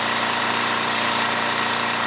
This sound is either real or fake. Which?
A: fake